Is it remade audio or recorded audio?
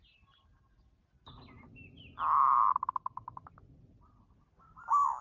recorded